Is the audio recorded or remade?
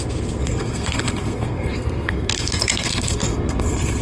remade